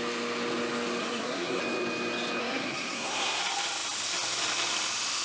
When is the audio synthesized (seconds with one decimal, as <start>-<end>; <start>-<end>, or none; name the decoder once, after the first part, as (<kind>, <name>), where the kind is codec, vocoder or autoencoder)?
1.0-1.6 (codec, SNAC); 2.4-3.4